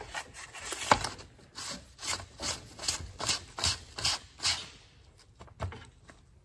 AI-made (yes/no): no